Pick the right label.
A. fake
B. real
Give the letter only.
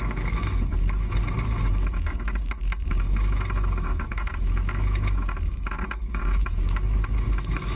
A